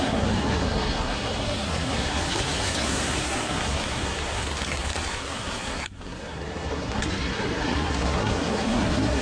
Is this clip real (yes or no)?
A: no